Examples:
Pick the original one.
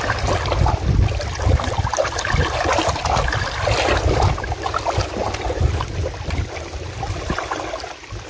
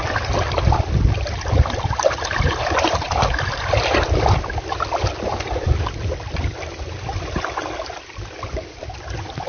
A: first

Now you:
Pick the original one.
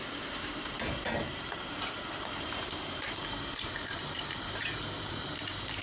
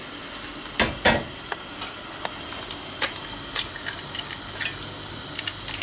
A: second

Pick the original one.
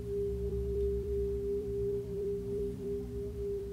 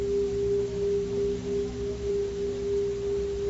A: second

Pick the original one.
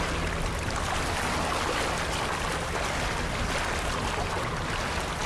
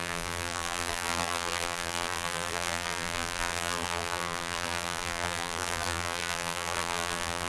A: first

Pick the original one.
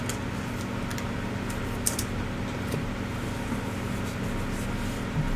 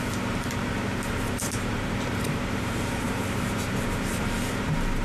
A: first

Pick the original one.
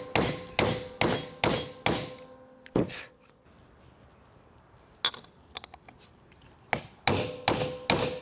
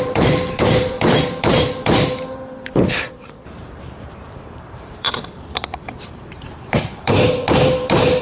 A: first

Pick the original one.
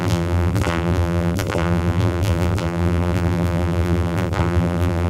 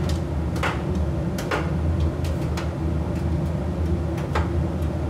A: second